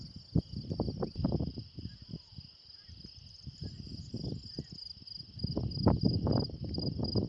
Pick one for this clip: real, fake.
real